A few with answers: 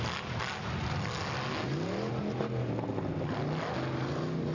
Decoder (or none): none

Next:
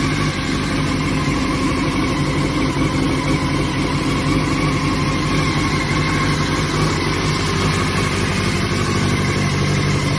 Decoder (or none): none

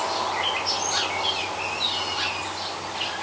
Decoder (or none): none